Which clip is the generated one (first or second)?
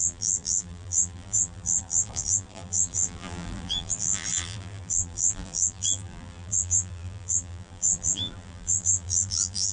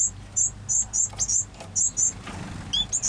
first